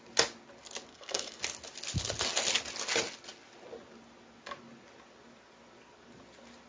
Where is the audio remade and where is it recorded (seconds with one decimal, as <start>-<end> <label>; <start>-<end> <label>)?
0.0-0.9 recorded; 0.9-1.4 remade; 1.4-6.7 recorded